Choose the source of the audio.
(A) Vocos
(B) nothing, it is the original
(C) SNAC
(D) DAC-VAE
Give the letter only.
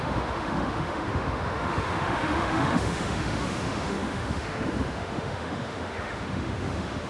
D